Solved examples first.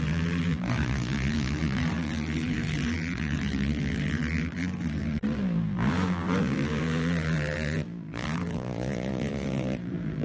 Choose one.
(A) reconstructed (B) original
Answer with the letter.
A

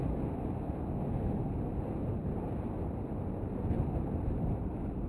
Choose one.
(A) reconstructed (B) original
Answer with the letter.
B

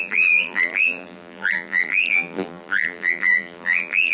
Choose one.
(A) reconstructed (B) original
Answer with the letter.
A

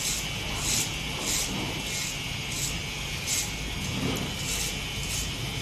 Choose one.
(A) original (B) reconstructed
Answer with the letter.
A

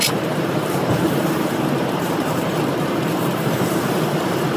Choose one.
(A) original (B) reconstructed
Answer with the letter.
B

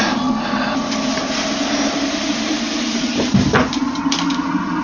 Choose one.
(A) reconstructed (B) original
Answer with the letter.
B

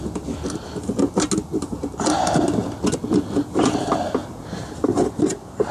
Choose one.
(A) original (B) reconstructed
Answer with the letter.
A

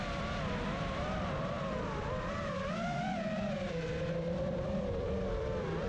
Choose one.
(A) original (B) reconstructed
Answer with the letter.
B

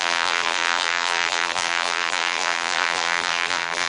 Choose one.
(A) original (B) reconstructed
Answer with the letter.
B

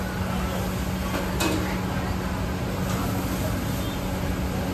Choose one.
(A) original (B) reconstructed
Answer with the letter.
A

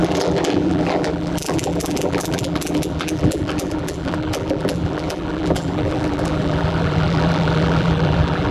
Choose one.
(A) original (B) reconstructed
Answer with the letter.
B